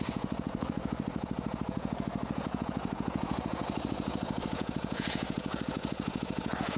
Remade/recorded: remade